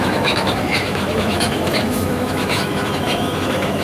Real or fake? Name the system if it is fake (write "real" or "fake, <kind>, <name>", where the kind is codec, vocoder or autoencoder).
fake, autoencoder, DAC-VAE